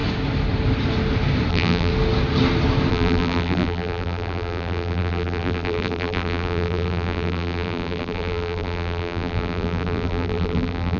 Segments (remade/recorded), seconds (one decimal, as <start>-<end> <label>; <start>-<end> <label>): 0.0-1.5 recorded; 1.5-1.9 remade; 1.9-2.9 recorded; 2.9-11.0 remade